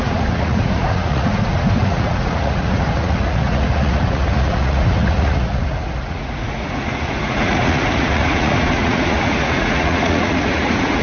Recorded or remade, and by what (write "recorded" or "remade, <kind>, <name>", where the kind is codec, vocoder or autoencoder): remade, vocoder, Vocos